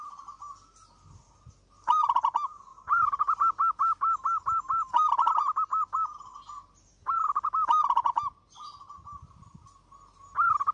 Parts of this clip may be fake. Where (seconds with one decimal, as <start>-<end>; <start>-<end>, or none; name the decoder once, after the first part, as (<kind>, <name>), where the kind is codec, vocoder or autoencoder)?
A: 2.7-5.1 (vocoder, BigVGAN v2); 5.7-7.8